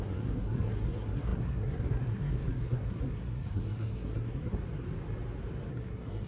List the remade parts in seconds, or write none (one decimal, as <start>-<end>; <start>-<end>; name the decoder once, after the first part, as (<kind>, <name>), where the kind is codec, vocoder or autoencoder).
0.0-4.6 (codec, SNAC); 5.7-6.3